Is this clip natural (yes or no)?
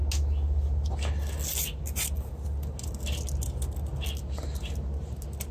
yes